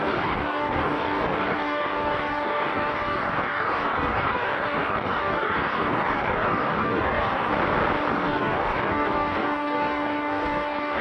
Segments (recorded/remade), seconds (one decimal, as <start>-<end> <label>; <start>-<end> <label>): 0.0-7.5 remade; 7.5-8.1 recorded; 8.1-11.0 remade